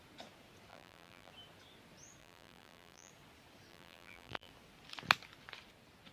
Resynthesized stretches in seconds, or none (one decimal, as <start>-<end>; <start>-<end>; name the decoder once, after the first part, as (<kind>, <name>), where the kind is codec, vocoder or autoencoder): 0.7-1.3 (vocoder, BigVGAN v2); 2.2-3.1; 3.7-4.5